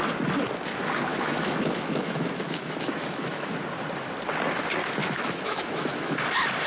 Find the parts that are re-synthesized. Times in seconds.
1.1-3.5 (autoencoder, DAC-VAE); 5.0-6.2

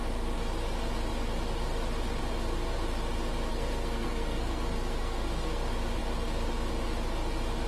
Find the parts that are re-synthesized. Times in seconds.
3.5-5.6 (codec, SNAC)

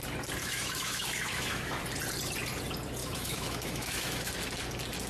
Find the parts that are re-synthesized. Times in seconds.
0.4-1.8 (autoencoder, DAC-VAE); 3.0-4.3

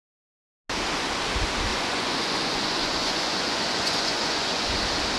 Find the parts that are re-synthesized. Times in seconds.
1.7-4.8 (vocoder, Vocos)

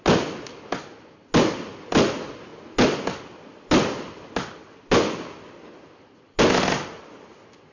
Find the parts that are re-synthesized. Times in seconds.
none

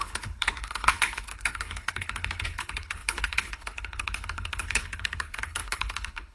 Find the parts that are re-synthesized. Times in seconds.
0.0-6.3 (codec, HILCodec)